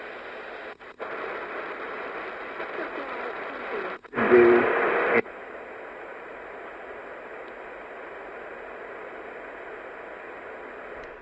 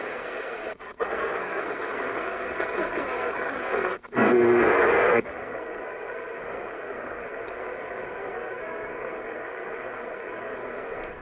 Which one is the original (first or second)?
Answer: first